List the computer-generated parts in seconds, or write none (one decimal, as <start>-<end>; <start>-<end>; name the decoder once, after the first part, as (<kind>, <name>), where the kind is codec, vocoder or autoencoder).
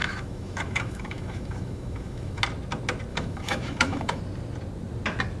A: 0.0-2.4 (autoencoder, DAC-VAE); 3.1-4.2